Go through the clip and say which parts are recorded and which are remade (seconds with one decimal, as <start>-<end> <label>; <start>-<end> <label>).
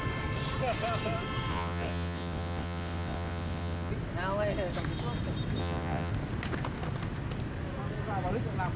0.0-1.5 recorded; 1.5-3.9 remade; 3.9-5.6 recorded; 5.6-6.1 remade; 6.1-8.8 recorded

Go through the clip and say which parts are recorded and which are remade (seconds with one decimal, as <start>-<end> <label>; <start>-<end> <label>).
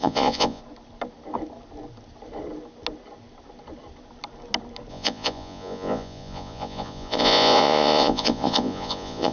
0.0-0.6 remade; 0.6-4.9 recorded; 4.9-9.3 remade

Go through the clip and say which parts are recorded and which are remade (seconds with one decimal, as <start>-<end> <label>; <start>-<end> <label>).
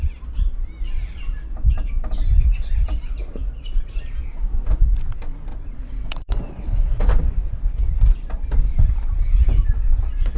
0.0-5.5 recorded; 5.5-7.2 remade; 7.2-10.4 recorded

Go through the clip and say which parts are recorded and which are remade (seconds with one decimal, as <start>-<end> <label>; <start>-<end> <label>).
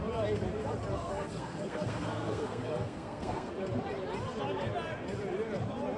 0.0-1.0 recorded; 1.0-3.5 remade; 3.5-6.0 recorded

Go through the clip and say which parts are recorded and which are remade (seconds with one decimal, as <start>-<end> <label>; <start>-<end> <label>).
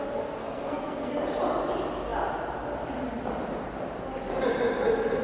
0.0-0.4 recorded; 0.4-1.1 remade; 1.1-5.2 recorded